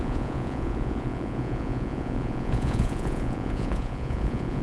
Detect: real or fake fake